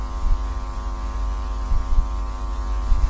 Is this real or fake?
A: fake